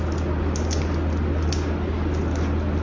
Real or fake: real